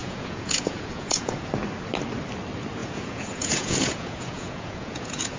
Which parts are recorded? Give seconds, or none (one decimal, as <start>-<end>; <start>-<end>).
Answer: 1.5-2.8